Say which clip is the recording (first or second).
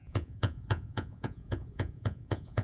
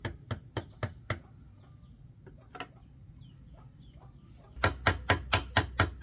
second